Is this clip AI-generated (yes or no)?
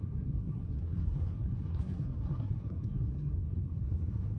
yes